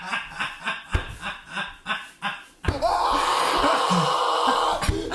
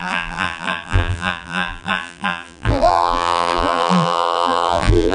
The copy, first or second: second